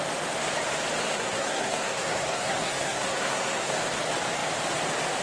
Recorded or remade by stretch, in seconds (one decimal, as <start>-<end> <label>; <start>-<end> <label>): 0.0-1.0 recorded; 1.0-3.8 remade; 3.8-5.2 recorded